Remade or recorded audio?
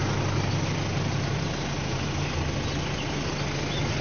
recorded